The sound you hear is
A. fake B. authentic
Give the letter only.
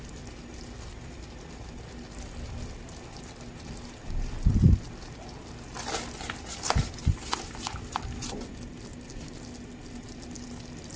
B